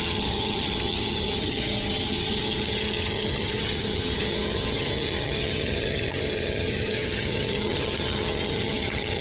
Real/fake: fake